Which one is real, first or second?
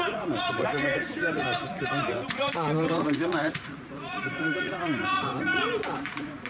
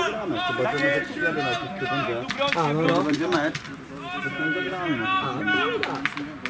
second